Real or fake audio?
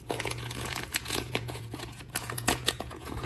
fake